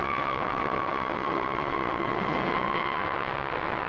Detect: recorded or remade remade